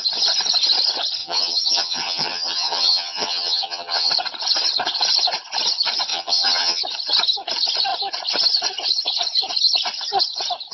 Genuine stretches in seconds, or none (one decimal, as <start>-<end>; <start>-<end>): 0.0-1.2; 4.1-6.1; 6.8-10.7